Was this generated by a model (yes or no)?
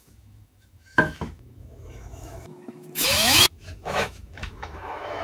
yes